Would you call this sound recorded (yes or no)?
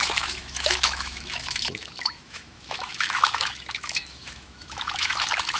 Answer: no